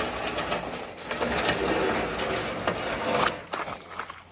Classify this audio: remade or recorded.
recorded